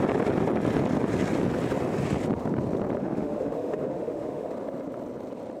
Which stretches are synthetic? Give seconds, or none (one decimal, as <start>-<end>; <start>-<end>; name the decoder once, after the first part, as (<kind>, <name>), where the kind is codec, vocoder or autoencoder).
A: 3.0-4.5 (autoencoder, DAC-VAE)